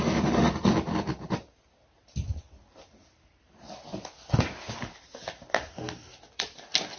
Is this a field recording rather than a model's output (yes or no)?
yes